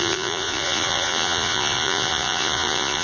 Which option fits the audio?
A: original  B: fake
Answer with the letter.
B